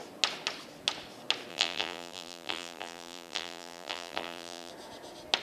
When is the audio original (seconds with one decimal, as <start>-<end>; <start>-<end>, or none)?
0.0-1.5; 4.7-5.4